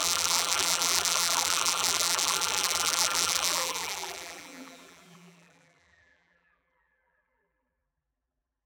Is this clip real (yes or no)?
no